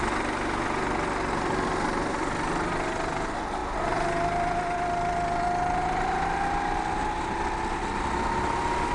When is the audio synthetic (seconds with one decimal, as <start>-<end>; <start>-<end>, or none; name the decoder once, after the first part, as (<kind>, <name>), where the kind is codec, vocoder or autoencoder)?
none